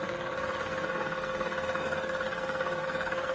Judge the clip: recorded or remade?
remade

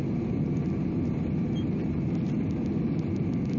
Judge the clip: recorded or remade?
recorded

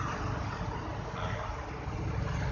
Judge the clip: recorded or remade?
recorded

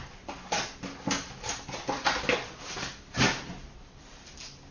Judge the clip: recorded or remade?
recorded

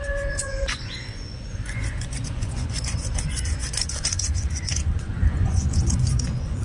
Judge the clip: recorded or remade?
remade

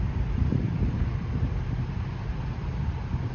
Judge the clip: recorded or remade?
remade